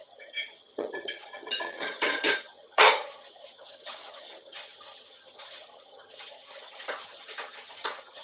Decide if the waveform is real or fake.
fake